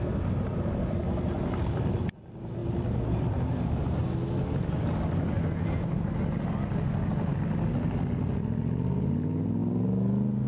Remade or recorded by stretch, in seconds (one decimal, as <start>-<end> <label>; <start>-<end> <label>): 0.0-2.6 recorded; 2.6-3.4 remade; 3.4-10.5 recorded